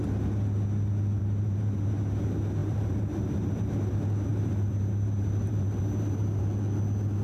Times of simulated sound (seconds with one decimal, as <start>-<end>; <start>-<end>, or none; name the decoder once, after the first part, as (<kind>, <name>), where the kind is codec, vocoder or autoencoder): 1.2-1.9 (vocoder, BigVGAN v2); 2.6-3.9; 4.3-6.4